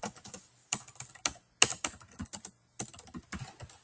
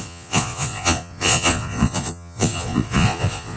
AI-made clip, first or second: second